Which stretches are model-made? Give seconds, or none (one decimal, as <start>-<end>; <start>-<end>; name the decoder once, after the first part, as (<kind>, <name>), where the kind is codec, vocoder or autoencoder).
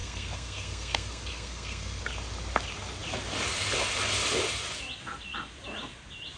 0.0-2.0 (codec, SNAC)